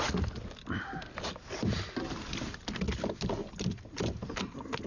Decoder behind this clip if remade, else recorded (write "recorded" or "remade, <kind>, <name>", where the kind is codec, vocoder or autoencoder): recorded